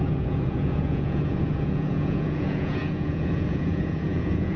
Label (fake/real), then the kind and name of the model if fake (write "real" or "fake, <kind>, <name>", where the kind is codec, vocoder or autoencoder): fake, vocoder, Vocos